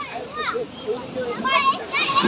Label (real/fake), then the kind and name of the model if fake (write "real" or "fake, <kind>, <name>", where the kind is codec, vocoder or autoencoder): fake, vocoder, BigVGAN v2